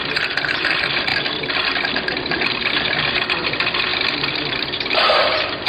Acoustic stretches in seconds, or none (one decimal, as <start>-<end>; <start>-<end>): none